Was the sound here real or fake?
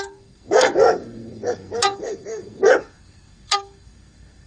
fake